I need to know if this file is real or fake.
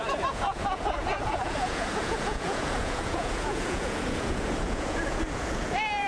fake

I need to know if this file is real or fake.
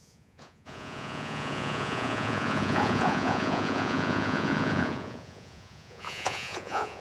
fake